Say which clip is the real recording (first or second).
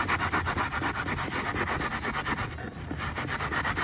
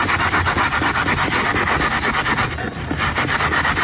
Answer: second